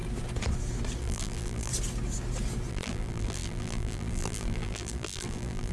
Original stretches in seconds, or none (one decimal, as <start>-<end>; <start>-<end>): 0.0-1.0; 1.7-2.7